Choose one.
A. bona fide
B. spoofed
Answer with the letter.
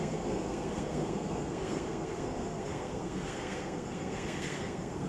B